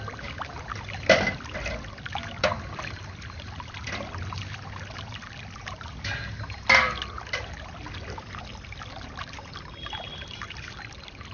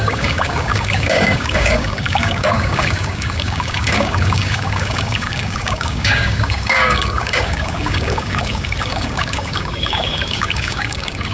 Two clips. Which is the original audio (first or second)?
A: first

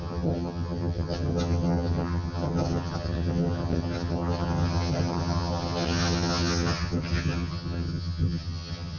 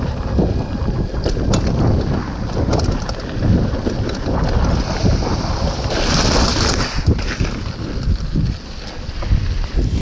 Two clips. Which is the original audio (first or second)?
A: second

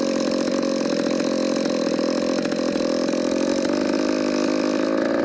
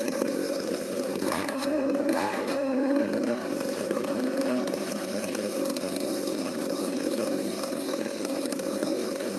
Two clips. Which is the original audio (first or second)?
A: first